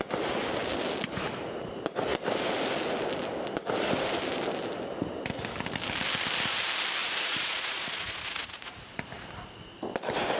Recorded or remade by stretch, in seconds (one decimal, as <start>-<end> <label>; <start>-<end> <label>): 0.0-7.0 recorded; 7.0-8.7 remade; 8.7-10.4 recorded